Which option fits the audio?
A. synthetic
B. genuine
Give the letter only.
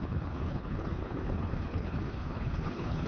A